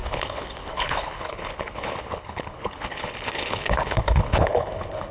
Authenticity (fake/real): fake